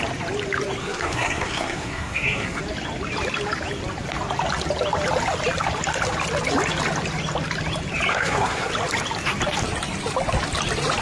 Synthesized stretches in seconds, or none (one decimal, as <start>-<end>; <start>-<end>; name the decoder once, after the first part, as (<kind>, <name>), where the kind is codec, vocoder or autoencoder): 0.8-2.6 (codec, SNAC); 8.1-8.7